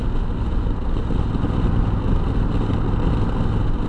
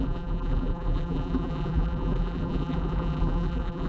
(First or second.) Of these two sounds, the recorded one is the first